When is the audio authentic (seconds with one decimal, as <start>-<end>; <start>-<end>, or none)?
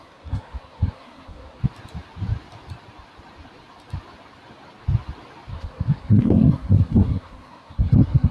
1.6-5.5